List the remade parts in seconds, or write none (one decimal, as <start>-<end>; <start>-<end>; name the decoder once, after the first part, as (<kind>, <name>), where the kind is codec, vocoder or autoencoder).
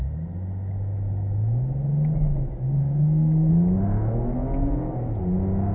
2.8-3.5 (codec, SNAC)